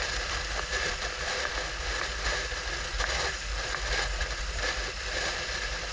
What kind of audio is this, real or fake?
real